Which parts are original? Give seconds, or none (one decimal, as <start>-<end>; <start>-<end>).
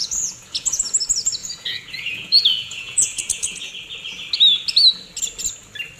0.8-1.4; 3.7-6.0